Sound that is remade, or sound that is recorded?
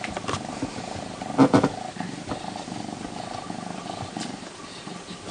remade